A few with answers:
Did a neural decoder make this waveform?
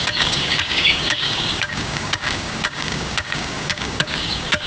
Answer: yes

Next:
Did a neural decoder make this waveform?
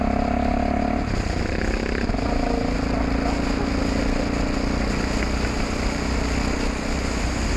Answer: no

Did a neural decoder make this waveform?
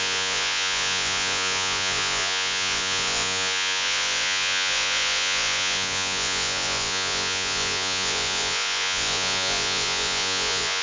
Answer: yes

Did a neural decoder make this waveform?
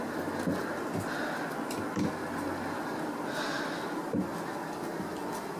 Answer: no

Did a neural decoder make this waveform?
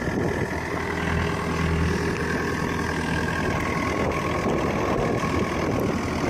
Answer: no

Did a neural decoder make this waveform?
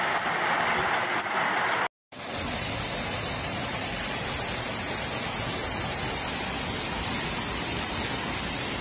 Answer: no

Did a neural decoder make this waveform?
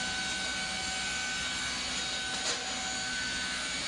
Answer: no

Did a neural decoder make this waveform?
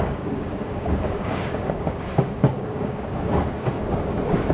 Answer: yes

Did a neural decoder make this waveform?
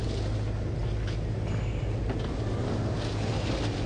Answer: no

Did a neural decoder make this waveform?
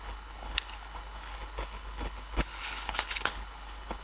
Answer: yes